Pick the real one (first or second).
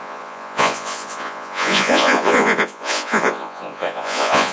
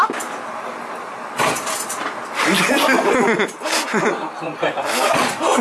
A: second